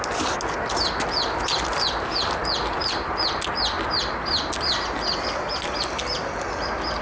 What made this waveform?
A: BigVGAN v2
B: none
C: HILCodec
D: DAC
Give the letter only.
B